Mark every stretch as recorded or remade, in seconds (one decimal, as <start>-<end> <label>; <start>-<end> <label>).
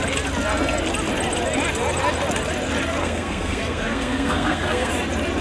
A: 0.0-3.0 recorded; 3.0-4.9 remade; 4.9-5.4 recorded